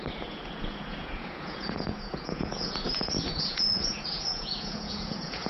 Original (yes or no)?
no